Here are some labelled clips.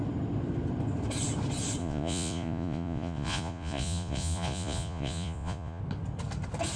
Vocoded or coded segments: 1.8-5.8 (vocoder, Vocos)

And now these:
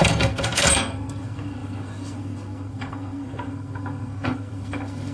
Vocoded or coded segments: 0.0-5.1 (codec, SNAC)

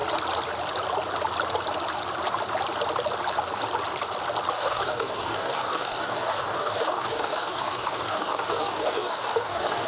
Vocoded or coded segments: 4.5-9.9 (codec, DAC)

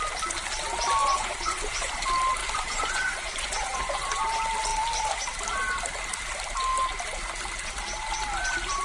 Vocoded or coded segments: 1.0-2.0 (vocoder, Vocos); 2.4-4.2

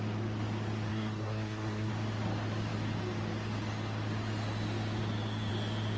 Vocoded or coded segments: 0.9-1.9 (codec, SNAC)